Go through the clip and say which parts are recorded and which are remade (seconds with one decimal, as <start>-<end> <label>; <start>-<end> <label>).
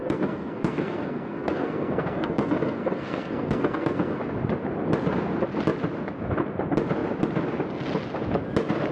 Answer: 0.0-4.2 remade; 4.2-8.9 recorded